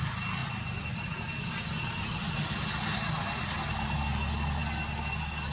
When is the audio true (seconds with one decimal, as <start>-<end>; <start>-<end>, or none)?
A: 0.0-5.5